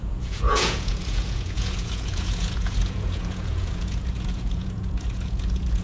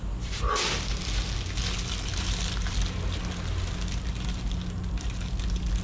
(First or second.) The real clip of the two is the second